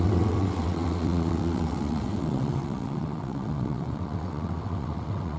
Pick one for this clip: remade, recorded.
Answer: remade